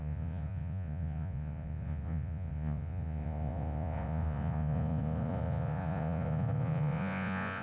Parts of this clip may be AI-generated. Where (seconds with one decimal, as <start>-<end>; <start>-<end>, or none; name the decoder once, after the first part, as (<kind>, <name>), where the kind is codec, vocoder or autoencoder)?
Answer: 0.0-7.6 (vocoder, Vocos)

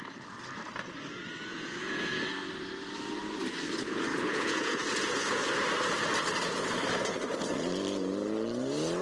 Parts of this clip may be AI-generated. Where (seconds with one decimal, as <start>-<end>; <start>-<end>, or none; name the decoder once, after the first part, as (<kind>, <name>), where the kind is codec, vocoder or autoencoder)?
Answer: 1.5-2.2 (vocoder, Vocos); 4.1-5.5

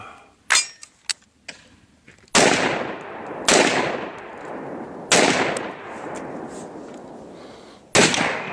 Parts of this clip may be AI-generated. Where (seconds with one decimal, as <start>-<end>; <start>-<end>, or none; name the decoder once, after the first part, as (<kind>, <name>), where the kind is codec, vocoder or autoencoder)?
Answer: none

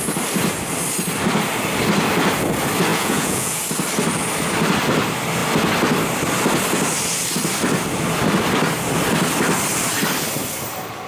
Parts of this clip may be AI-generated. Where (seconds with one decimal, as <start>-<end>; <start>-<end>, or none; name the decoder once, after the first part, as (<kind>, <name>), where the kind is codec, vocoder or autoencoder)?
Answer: 2.9-3.6 (vocoder, Vocos)

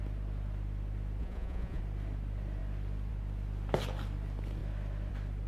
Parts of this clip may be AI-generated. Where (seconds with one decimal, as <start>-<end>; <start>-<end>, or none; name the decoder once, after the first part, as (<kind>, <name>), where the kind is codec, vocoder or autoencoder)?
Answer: 1.2-1.8 (vocoder, Vocos)

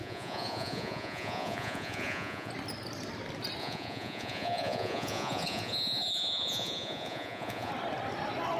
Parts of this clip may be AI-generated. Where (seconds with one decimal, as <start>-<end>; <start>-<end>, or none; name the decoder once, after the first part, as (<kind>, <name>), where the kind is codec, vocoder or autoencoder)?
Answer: 0.0-2.5 (vocoder, Vocos); 3.6-7.7